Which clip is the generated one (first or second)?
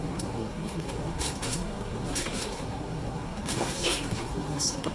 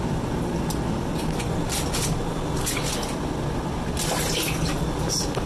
first